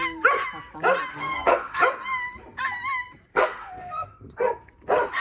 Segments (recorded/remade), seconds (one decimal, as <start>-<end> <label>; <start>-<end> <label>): 0.0-1.1 recorded; 1.1-1.8 remade; 1.8-3.3 recorded; 3.3-4.7 remade; 4.7-5.2 recorded